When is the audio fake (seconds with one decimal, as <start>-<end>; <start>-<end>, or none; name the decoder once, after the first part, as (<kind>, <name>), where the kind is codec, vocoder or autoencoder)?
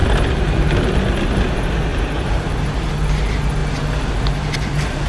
1.9-2.9 (vocoder, BigVGAN v2)